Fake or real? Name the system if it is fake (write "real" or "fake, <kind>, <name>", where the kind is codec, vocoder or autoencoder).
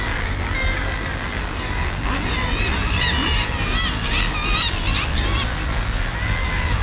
fake, vocoder, BigVGAN v2